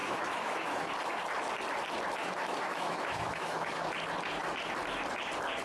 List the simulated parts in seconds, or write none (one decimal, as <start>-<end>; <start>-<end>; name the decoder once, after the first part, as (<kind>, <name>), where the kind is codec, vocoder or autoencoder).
0.0-0.9 (autoencoder, DAC-VAE); 2.2-3.8

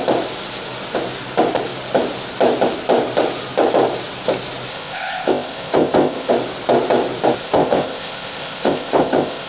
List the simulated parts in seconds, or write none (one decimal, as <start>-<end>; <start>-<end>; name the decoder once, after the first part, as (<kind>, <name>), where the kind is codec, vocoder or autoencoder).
4.7-6.3 (codec, ZipCodec); 7.4-9.5

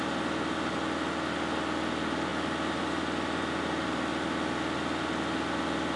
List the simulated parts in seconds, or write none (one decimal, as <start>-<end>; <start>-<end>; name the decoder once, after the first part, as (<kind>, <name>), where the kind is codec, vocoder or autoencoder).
none

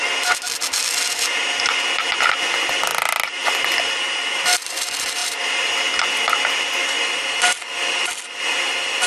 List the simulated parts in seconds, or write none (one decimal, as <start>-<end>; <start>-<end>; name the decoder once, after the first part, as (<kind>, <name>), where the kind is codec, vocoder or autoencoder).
none

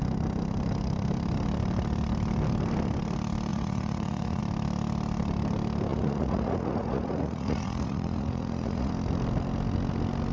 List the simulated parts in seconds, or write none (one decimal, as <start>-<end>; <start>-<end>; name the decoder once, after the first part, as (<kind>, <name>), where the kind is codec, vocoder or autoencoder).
3.5-4.4 (vocoder, Vocos); 5.9-8.9

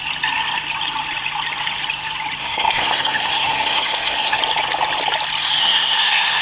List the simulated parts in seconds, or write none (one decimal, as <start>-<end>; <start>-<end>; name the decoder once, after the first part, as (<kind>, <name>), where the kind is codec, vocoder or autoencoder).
2.4-4.4 (codec, SNAC); 5.6-6.4

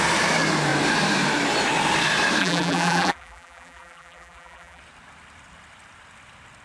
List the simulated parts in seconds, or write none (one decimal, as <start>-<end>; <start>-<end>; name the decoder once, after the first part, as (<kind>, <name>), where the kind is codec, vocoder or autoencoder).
2.4-4.8 (vocoder, BigVGAN v2)

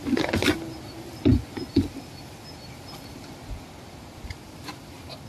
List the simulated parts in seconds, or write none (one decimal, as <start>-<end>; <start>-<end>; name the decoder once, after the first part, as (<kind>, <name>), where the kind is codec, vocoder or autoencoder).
none